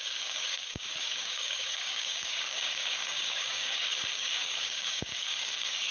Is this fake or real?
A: fake